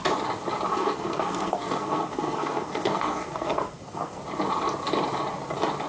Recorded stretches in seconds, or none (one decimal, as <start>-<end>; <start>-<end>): 0.0-0.7; 4.2-5.9